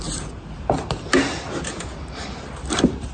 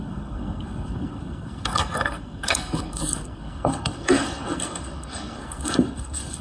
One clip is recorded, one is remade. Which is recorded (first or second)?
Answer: first